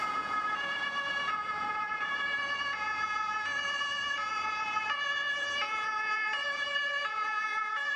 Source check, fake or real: fake